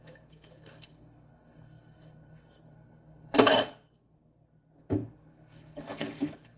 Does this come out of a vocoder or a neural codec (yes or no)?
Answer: yes